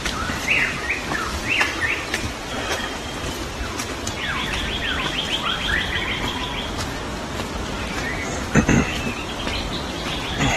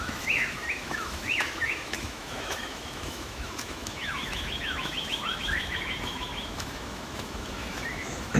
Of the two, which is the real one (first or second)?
first